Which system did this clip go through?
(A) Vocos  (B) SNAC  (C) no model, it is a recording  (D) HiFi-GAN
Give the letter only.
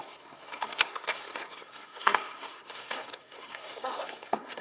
B